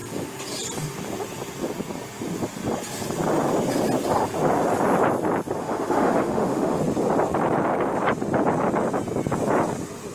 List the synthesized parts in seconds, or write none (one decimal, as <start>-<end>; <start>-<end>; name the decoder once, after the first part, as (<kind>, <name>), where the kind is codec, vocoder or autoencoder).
5.6-6.8 (autoencoder, DAC-VAE)